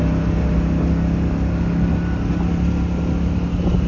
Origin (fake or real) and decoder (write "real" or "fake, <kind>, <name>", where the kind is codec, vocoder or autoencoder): real